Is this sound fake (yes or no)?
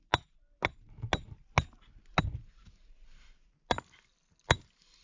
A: no